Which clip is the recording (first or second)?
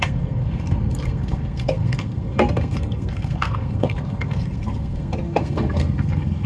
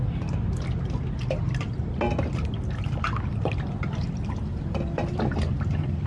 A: second